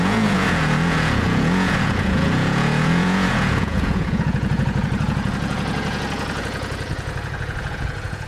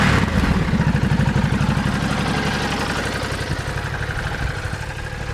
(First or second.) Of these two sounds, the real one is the second